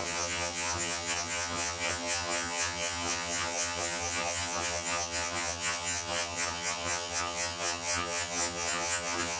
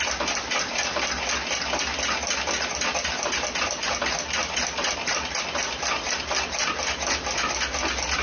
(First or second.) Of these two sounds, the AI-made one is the first